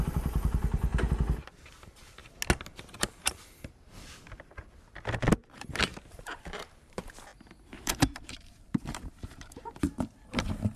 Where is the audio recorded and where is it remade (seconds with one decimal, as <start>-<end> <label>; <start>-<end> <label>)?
0.0-0.9 remade; 0.9-1.7 recorded; 1.7-2.2 remade; 2.2-6.1 recorded; 6.1-10.8 remade